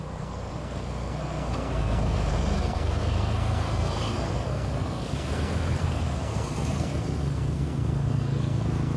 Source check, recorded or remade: remade